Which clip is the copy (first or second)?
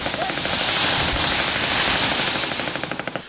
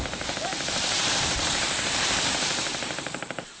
second